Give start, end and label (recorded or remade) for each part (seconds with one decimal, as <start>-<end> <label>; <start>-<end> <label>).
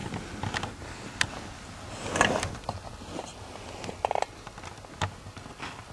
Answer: 0.0-5.9 recorded